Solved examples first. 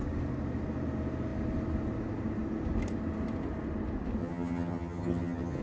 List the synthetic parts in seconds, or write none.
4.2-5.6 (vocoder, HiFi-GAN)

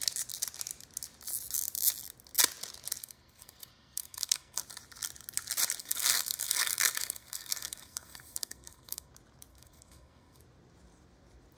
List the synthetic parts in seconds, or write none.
3.0-4.6 (codec, SNAC); 5.8-9.1; 9.5-10.4